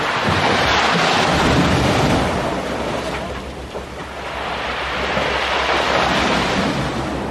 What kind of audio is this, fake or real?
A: real